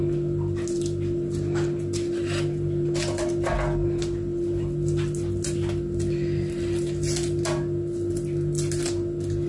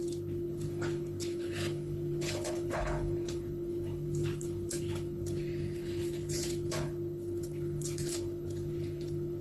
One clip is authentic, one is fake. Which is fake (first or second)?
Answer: second